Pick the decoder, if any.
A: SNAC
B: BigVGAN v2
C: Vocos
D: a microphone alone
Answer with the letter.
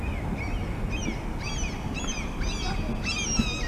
D